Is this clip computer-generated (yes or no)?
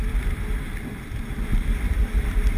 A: yes